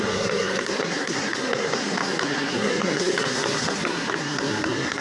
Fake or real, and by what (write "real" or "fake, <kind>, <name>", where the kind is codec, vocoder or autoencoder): fake, codec, SNAC